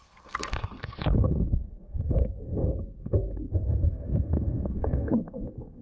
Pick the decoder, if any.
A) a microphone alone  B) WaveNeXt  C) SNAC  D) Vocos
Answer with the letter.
C